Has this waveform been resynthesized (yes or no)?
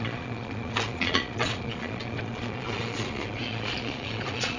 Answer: yes